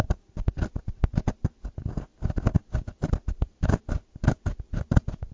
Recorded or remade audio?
remade